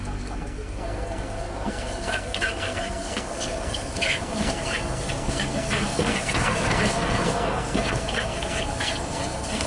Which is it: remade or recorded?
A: remade